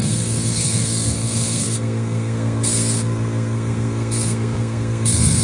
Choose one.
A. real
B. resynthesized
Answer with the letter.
B